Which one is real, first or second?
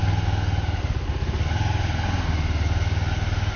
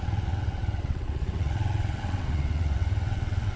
first